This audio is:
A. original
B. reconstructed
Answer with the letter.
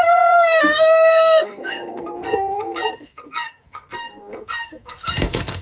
B